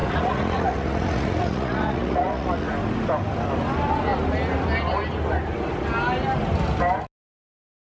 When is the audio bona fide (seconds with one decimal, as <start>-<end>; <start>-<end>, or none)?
2.7-7.9